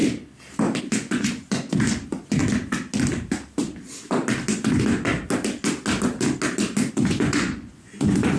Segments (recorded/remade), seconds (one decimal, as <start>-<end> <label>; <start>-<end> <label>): 0.0-0.8 recorded; 0.8-2.4 remade; 2.4-4.5 recorded; 4.5-5.1 remade; 5.1-6.9 recorded; 6.9-8.4 remade